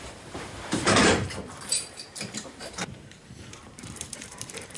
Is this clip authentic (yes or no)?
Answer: no